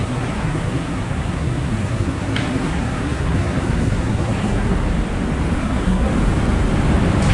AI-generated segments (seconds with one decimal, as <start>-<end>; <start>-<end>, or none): 0.0-4.9; 5.6-6.1